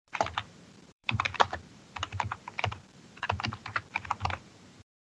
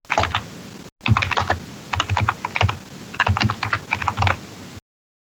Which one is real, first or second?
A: second